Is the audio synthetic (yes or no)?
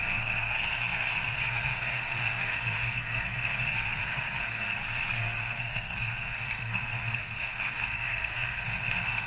yes